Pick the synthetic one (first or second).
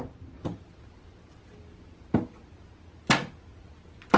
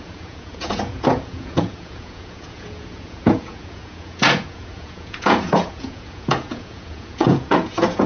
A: second